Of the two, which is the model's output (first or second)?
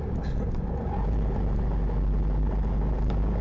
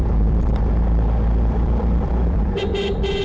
second